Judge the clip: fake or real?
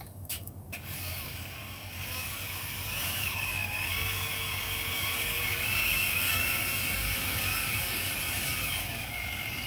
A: fake